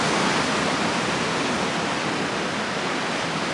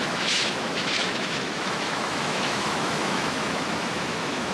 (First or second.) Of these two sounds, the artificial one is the second